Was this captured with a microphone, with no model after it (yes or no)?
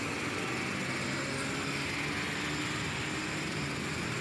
yes